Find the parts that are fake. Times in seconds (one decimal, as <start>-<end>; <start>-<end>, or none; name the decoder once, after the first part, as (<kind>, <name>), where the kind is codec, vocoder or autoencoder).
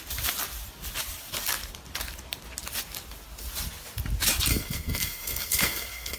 4.5-6.2 (codec, SNAC)